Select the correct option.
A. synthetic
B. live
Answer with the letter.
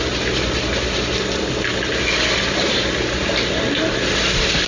B